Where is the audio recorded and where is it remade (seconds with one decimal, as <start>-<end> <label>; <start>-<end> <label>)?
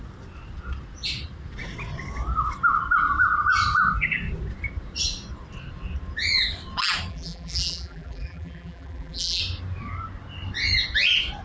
0.0-7.1 recorded; 7.1-9.4 remade; 9.4-11.4 recorded